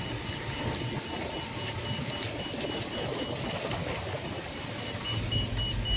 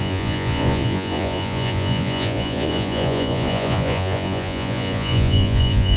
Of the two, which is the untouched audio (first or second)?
first